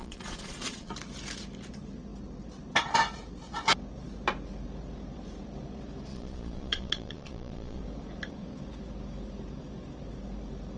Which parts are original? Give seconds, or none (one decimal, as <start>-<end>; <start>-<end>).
0.9-6.1; 7.8-10.8